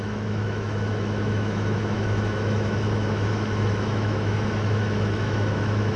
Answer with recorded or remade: remade